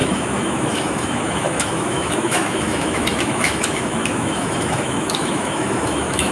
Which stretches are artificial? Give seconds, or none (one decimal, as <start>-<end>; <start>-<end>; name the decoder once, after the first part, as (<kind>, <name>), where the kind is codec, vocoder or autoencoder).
0.0-6.3 (autoencoder, DAC-VAE)